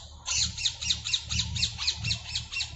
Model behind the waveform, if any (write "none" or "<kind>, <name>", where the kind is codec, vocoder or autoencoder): none